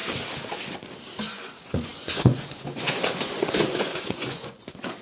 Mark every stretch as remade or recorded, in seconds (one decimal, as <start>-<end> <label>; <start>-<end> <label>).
0.0-1.2 recorded; 1.2-5.0 remade